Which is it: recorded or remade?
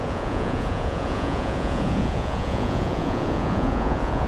remade